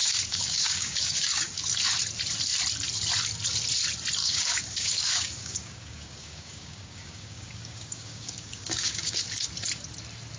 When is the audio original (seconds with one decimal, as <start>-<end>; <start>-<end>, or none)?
1.6-4.2; 9.5-10.4